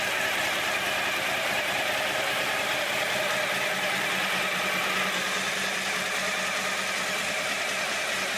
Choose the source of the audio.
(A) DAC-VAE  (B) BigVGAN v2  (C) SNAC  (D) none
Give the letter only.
D